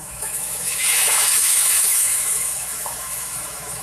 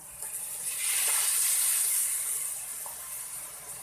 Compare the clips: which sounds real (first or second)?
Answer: second